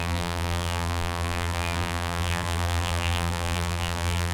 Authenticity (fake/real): fake